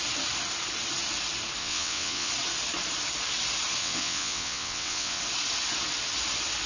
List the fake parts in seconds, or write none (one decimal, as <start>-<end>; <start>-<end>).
1.6-2.3; 3.8-5.2